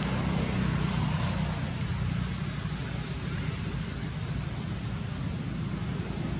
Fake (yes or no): no